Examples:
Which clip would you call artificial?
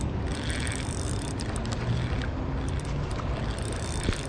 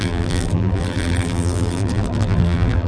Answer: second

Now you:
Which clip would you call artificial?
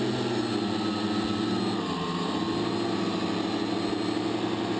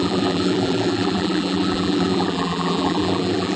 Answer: second